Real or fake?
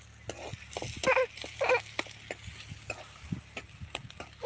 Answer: real